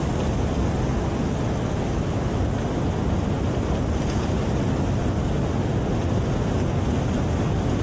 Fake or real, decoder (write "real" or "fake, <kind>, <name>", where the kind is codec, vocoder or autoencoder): real